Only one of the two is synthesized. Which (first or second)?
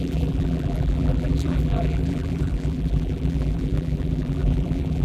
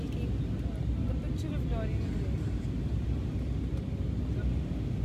first